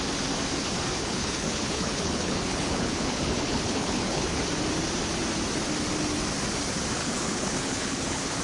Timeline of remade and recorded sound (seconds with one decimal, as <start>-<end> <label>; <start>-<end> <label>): 0.0-1.0 recorded; 1.0-4.4 remade; 4.4-7.0 recorded; 7.0-8.4 remade